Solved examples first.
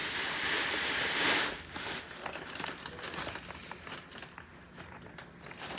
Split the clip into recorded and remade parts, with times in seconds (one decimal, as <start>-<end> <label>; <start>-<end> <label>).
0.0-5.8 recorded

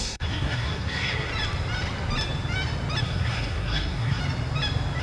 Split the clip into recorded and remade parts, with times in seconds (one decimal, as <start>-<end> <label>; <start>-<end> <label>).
0.0-1.3 remade; 1.3-3.0 recorded; 3.0-4.2 remade; 4.2-5.0 recorded

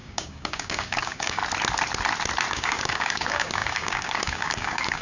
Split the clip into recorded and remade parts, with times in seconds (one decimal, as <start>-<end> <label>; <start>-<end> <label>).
0.0-1.4 remade; 1.4-2.5 recorded; 2.5-5.0 remade